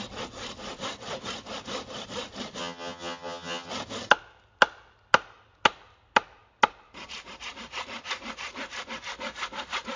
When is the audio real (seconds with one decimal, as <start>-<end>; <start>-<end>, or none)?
0.0-2.6; 3.7-10.0